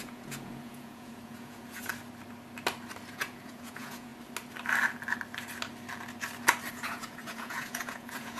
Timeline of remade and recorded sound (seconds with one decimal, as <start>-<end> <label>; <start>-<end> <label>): 0.0-1.9 remade; 1.9-3.1 recorded; 3.1-4.1 remade; 4.1-6.7 recorded; 6.7-8.4 remade